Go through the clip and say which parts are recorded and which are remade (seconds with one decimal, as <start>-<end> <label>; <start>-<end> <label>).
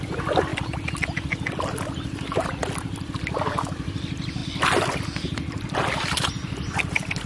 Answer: 0.0-0.5 recorded; 0.5-3.1 remade; 3.1-4.4 recorded; 4.4-5.0 remade; 5.0-7.3 recorded